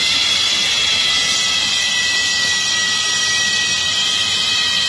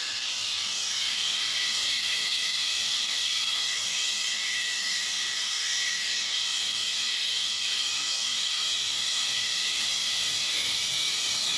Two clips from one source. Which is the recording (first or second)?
first